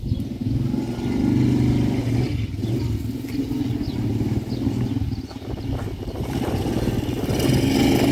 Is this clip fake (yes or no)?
no